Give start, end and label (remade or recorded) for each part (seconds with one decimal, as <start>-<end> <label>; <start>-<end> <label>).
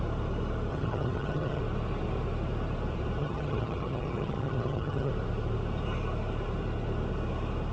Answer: 0.0-0.7 recorded; 0.7-1.6 remade; 1.6-3.2 recorded; 3.2-5.1 remade; 5.1-7.7 recorded